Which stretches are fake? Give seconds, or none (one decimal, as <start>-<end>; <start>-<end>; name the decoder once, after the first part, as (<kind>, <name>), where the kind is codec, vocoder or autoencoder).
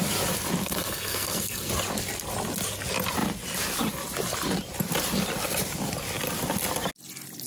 0.6-1.7 (codec, SNAC)